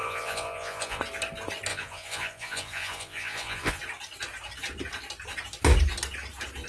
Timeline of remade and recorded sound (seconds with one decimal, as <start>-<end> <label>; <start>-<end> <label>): 0.0-1.0 remade; 1.0-1.7 recorded; 1.7-3.8 remade; 3.8-6.7 recorded